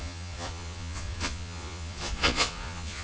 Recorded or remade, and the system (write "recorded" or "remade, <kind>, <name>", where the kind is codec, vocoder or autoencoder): remade, vocoder, Vocos